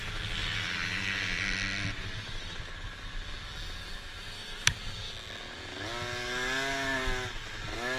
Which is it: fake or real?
real